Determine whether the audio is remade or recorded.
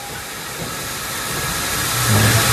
recorded